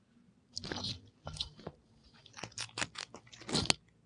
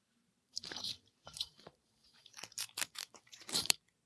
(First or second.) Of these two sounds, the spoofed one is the second